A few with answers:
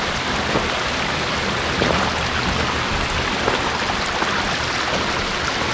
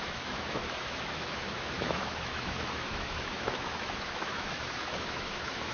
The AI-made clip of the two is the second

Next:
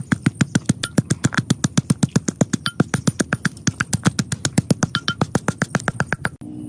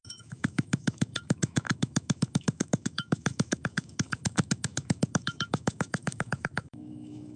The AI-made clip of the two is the second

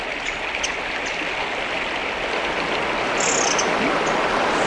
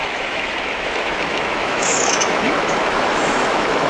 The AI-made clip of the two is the second